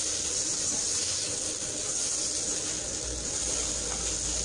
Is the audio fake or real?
real